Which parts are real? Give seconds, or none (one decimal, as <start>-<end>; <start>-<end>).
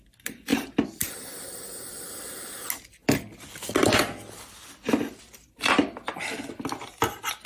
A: 0.0-0.5; 2.4-7.5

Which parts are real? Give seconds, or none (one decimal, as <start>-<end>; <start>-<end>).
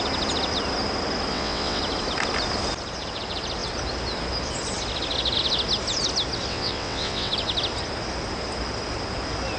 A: 0.0-1.3; 1.8-6.5; 7.3-9.6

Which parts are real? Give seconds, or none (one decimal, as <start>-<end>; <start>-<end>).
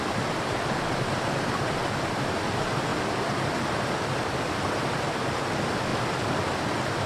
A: 0.0-7.1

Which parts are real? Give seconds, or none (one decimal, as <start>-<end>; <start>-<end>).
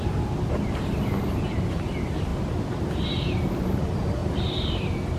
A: 0.0-2.3; 3.4-5.2